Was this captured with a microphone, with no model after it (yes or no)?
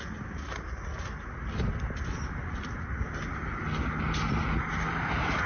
yes